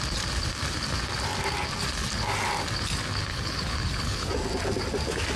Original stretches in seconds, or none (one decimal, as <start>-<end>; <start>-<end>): 0.0-3.3; 4.3-5.4